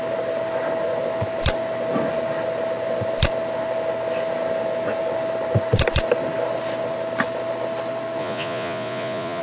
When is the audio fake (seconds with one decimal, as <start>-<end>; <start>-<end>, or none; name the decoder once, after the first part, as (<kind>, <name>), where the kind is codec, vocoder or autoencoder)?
8.2-9.4 (vocoder, Vocos)